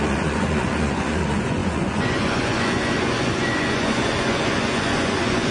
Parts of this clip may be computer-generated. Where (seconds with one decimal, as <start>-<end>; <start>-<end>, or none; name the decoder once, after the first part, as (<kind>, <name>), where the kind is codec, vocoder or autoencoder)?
0.0-5.5 (vocoder, Vocos)